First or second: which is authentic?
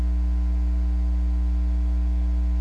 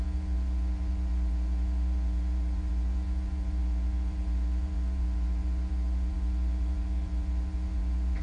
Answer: first